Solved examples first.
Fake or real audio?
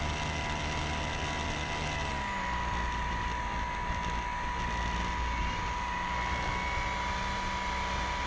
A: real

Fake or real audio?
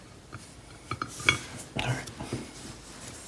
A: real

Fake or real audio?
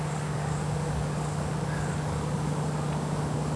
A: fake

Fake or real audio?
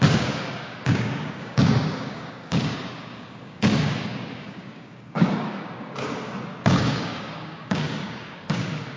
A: fake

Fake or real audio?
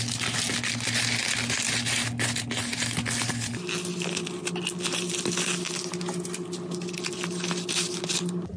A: real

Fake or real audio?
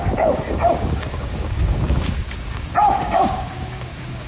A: fake